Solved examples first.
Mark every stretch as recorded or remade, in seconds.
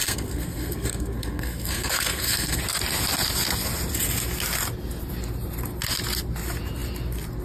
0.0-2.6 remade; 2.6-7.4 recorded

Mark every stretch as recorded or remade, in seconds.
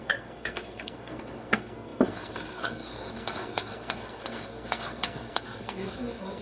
0.0-6.4 remade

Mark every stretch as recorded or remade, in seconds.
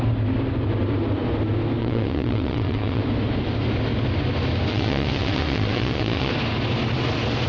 0.0-1.8 recorded; 1.8-3.0 remade; 3.0-4.7 recorded; 4.7-6.3 remade; 6.3-7.5 recorded